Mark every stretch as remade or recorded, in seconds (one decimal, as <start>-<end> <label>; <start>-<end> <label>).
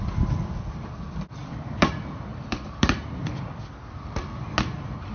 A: 0.0-1.4 recorded; 1.4-1.9 remade; 1.9-2.3 recorded; 2.3-3.0 remade; 3.0-5.1 recorded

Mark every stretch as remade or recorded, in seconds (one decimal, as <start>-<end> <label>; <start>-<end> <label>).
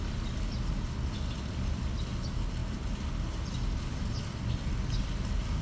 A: 0.0-5.6 recorded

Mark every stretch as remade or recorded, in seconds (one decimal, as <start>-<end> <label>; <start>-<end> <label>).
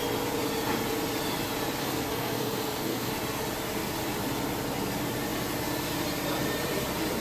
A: 0.0-1.8 recorded; 1.8-3.1 remade; 3.1-7.2 recorded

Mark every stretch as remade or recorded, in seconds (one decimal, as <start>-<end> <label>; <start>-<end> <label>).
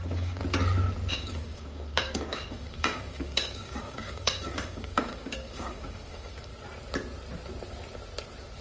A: 0.0-0.4 remade; 0.4-1.1 recorded; 1.1-6.5 remade; 6.5-8.6 recorded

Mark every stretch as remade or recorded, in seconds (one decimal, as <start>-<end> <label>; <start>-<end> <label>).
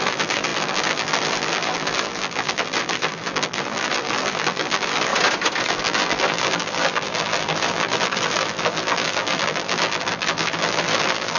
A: 0.0-5.1 remade; 5.1-5.6 recorded; 5.6-11.4 remade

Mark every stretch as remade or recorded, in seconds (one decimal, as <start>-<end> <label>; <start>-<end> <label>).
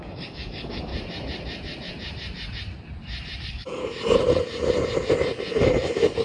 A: 0.0-0.9 remade; 0.9-3.4 recorded; 3.4-3.8 remade; 3.8-6.2 recorded